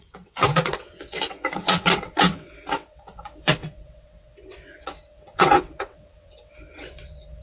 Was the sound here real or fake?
fake